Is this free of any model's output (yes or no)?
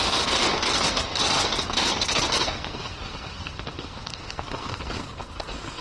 no